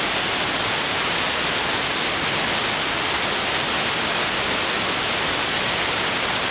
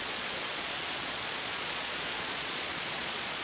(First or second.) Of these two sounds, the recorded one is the first